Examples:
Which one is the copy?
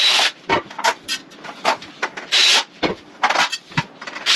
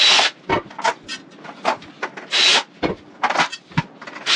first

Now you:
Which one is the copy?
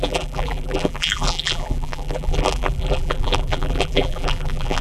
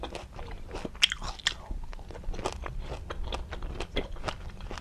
first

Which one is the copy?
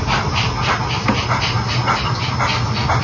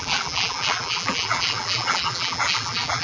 second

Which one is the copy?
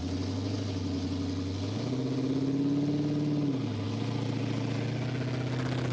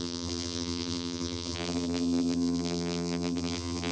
second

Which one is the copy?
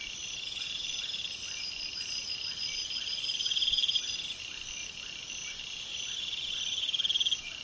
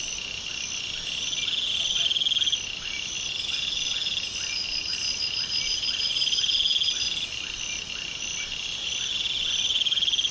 first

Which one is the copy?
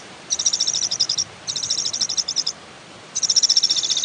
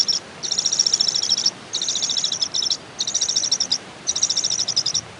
first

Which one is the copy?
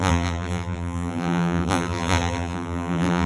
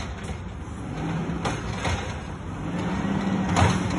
first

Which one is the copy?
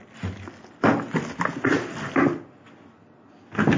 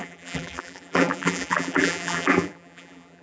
second